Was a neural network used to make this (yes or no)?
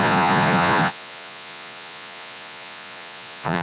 yes